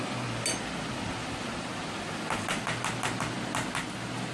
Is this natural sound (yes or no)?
yes